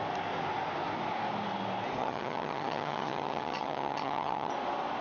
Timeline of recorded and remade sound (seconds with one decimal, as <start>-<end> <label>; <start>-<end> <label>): 0.0-2.0 recorded; 2.0-4.5 remade; 4.5-5.0 recorded